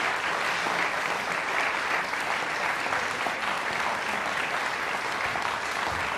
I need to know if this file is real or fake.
real